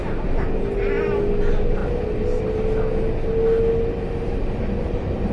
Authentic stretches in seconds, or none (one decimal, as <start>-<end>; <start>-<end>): 0.0-5.3